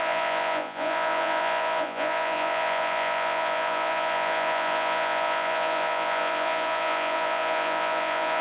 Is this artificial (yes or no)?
yes